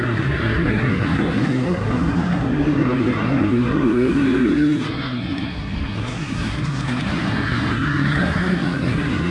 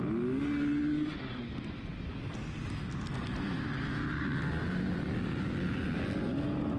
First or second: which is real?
second